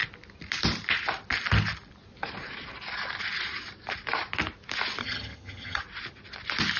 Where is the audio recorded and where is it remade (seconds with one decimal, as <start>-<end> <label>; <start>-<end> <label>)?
0.0-5.0 recorded; 5.0-5.8 remade; 5.8-6.8 recorded